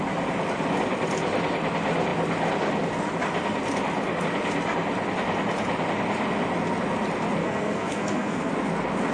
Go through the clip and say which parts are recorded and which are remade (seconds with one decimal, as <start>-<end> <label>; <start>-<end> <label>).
0.0-7.4 recorded; 7.4-8.5 remade; 8.5-9.1 recorded